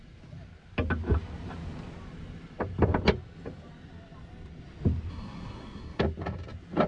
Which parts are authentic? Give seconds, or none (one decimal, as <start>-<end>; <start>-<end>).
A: 0.0-5.1; 6.0-6.9